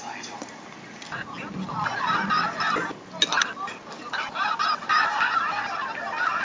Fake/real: real